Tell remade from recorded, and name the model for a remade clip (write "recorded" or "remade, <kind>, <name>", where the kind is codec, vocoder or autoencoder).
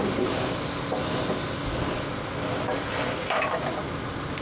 recorded